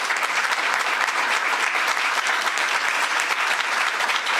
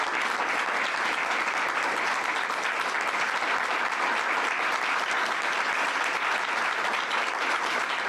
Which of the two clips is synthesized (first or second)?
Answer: first